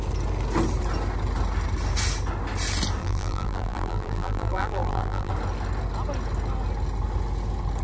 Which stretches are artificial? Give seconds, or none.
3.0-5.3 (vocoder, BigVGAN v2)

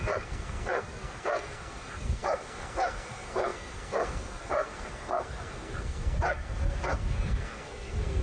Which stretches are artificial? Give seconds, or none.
0.0-8.2 (codec, SNAC)